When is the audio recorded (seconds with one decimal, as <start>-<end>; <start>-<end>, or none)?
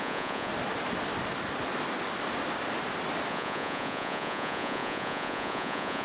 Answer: 0.5-3.3